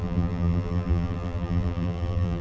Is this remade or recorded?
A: remade